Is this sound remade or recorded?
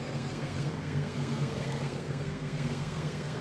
remade